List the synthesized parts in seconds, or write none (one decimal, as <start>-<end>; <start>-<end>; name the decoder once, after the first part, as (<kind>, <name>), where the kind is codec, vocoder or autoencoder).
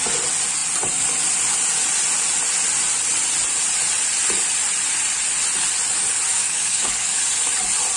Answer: 6.3-7.2 (codec, DAC)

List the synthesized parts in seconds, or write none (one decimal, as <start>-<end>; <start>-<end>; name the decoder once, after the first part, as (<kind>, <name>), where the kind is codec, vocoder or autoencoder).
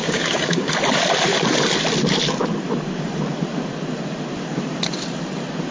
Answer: 0.0-0.7 (codec, DAC)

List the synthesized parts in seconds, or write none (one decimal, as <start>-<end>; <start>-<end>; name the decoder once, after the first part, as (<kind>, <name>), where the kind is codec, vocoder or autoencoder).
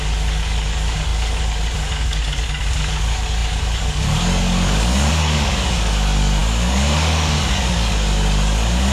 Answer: 0.0-8.9 (codec, DAC)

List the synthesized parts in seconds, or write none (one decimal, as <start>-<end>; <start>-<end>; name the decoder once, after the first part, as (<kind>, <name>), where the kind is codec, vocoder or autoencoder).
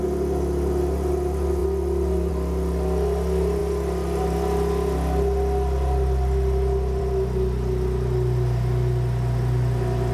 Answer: none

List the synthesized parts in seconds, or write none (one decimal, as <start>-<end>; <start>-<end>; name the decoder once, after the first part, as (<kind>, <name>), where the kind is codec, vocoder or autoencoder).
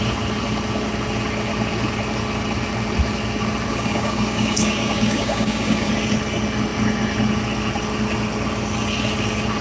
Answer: 3.7-5.9 (codec, DAC)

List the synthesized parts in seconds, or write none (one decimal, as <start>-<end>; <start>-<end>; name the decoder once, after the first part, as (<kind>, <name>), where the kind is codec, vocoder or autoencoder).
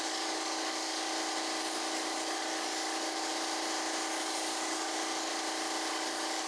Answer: 0.0-1.1 (codec, DAC); 1.6-3.3; 4.1-5.3; 5.9-6.5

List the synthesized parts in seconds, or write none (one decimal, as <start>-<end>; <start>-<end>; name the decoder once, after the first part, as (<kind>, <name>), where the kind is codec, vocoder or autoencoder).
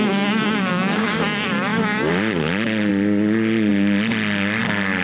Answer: 0.7-1.2 (codec, DAC)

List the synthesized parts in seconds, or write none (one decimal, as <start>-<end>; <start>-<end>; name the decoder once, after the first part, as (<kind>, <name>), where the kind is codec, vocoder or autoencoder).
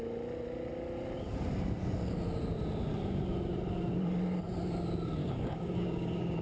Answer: 5.2-6.4 (codec, DAC)